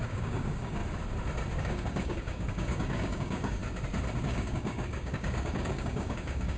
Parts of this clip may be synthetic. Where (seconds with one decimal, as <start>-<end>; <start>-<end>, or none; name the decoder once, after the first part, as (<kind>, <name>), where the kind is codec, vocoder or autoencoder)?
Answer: 0.0-0.8 (codec, DAC); 1.6-3.6; 4.2-6.6